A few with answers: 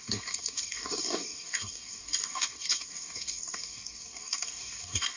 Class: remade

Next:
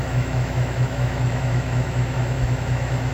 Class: remade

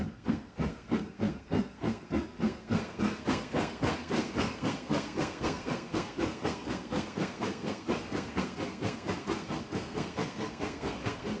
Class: remade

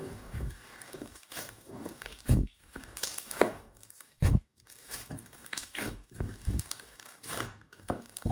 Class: remade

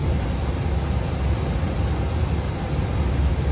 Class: recorded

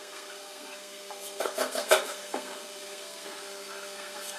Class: remade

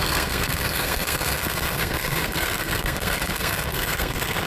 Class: remade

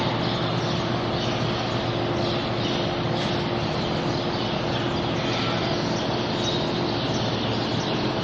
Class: recorded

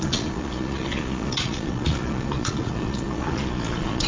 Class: remade